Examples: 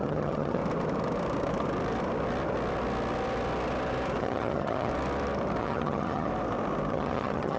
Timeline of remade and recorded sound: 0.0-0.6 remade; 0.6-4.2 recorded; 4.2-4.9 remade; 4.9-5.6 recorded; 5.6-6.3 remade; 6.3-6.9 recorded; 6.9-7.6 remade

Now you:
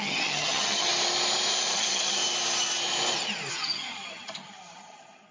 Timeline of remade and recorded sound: 0.0-0.9 remade; 0.9-1.7 recorded; 1.7-2.2 remade; 2.2-3.5 recorded; 3.5-5.3 remade

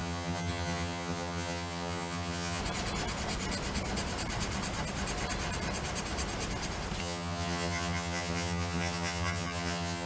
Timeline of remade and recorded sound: 0.0-2.6 remade; 2.6-7.0 recorded; 7.0-10.1 remade

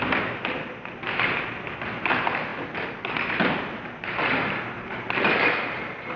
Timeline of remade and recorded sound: 0.0-6.2 recorded